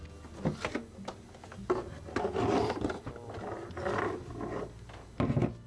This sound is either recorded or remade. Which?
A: recorded